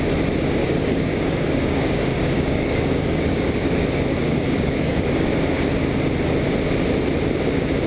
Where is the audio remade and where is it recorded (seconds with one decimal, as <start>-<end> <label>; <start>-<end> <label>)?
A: 0.0-0.6 recorded; 0.6-5.3 remade; 5.3-7.9 recorded